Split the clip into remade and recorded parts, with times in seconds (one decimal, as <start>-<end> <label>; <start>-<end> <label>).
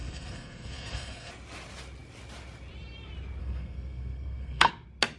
0.0-1.3 remade; 1.3-3.4 recorded; 3.4-4.7 remade; 4.7-5.2 recorded